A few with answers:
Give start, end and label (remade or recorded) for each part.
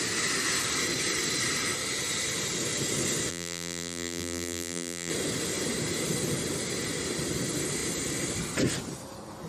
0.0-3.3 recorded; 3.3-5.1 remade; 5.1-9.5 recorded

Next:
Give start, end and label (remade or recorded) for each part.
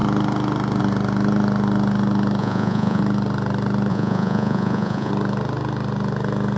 0.0-2.4 recorded; 2.4-3.0 remade; 3.0-3.9 recorded; 3.9-5.1 remade; 5.1-6.6 recorded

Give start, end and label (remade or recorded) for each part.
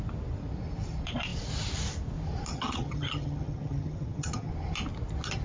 0.0-2.5 recorded; 2.5-4.5 remade; 4.5-5.4 recorded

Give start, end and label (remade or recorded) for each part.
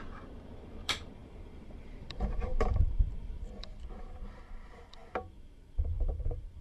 0.0-6.6 remade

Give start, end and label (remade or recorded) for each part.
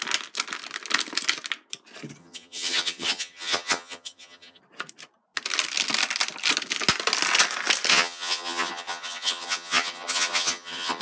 0.0-2.2 recorded; 2.2-4.6 remade; 4.6-7.9 recorded; 7.9-11.0 remade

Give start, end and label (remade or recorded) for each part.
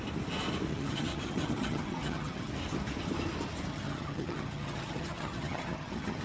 0.0-0.7 recorded; 0.7-2.5 remade; 2.5-3.7 recorded; 3.7-6.2 remade